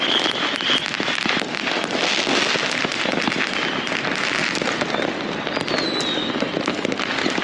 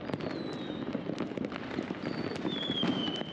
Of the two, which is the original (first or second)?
first